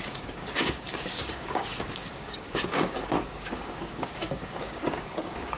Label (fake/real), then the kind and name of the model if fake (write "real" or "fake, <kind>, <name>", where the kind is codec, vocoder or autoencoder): fake, codec, DAC